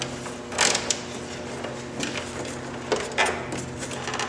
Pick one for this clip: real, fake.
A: real